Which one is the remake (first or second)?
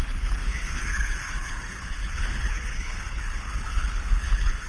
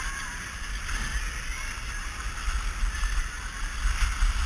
first